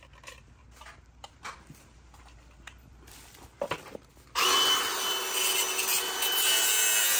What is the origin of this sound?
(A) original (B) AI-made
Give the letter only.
A